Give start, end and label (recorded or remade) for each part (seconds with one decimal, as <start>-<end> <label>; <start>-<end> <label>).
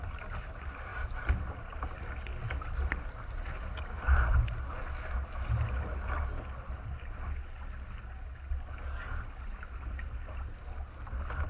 0.0-11.5 recorded